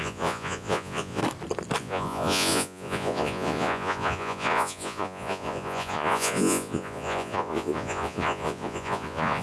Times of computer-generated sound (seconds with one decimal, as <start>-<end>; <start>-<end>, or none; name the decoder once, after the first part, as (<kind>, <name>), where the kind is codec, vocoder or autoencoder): 0.0-1.2 (vocoder, Vocos); 1.8-9.4

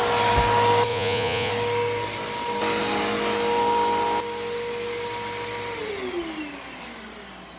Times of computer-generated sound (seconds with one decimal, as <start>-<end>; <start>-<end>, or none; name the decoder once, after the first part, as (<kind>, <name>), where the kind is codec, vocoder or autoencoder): 0.9-1.5 (vocoder, Vocos)